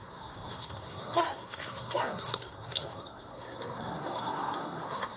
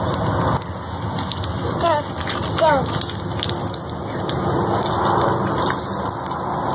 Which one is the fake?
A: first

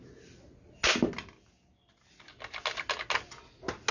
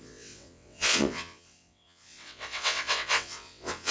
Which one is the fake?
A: second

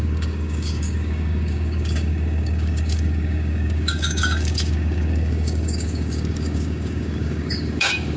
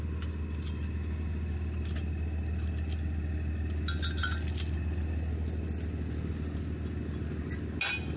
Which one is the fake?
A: first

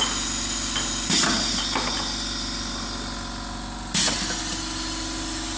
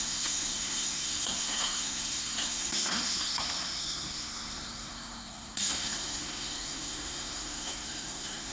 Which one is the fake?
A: second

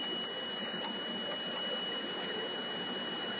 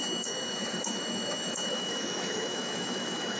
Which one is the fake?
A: second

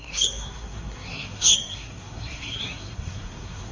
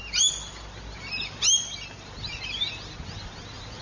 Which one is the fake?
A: first